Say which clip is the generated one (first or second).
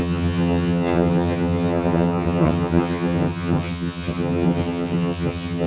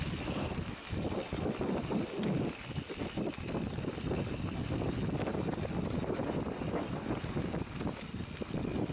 first